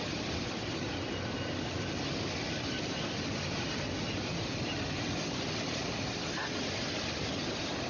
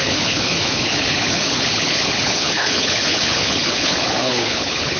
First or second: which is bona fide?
first